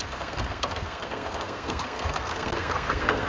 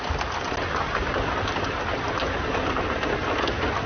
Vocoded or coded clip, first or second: first